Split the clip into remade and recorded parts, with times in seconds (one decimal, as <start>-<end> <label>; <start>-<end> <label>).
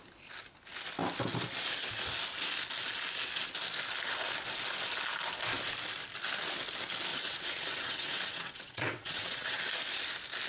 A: 0.0-7.1 recorded; 7.1-9.6 remade; 9.6-10.5 recorded